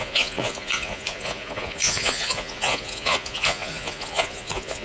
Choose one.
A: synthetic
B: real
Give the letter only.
A